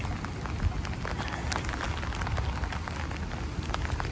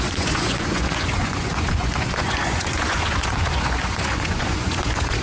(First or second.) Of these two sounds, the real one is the first